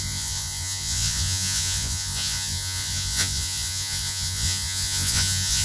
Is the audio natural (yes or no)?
no